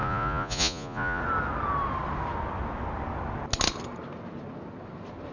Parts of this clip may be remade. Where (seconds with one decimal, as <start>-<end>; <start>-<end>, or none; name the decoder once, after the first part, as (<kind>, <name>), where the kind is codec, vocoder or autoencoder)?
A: 0.0-1.2 (vocoder, Vocos)